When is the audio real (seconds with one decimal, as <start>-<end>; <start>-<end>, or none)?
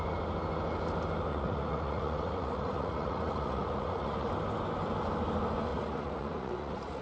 0.0-1.3; 4.3-5.7